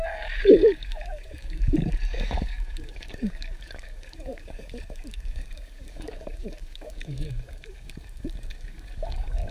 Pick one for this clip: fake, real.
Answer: fake